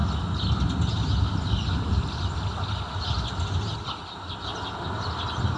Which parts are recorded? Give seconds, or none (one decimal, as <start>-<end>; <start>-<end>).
0.0-5.6